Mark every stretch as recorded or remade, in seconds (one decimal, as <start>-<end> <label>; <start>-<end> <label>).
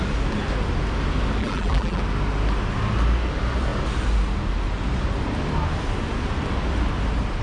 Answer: 0.0-1.4 recorded; 1.4-2.0 remade; 2.0-7.4 recorded